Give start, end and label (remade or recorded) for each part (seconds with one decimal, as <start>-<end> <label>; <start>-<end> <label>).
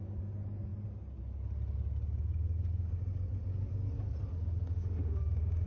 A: 0.0-4.7 recorded; 4.7-5.7 remade